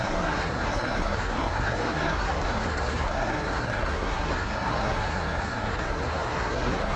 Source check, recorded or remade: remade